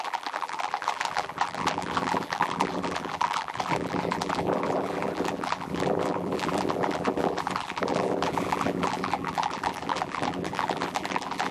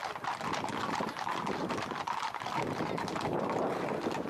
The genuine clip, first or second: second